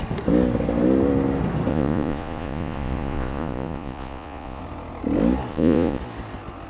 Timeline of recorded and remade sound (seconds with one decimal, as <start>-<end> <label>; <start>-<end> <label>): 0.0-1.7 recorded; 1.7-4.6 remade; 4.6-5.5 recorded; 5.5-6.0 remade; 6.0-6.7 recorded